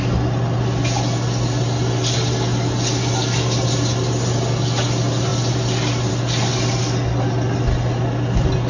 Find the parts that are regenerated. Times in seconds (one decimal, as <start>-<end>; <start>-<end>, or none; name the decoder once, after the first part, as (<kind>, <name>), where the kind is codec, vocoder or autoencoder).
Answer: none